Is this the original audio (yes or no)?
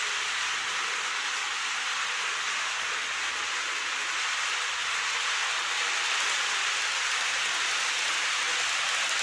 yes